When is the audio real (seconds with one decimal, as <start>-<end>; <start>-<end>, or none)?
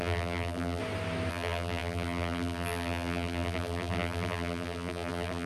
0.8-1.3